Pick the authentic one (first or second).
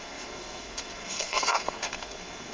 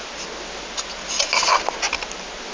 second